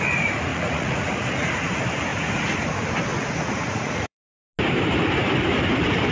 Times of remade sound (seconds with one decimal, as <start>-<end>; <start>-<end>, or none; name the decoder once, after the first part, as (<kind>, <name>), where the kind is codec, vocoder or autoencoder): 0.5-1.5 (vocoder, Vocos); 2.1-2.7; 3.1-4.2